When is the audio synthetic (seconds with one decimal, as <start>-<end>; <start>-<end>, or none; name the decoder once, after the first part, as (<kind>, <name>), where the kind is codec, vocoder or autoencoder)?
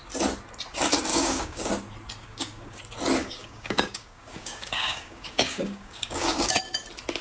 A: 1.1-1.7 (codec, DAC); 2.2-2.8; 3.2-6.6